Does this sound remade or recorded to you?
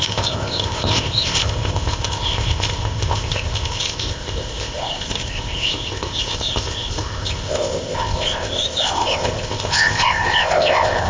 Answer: remade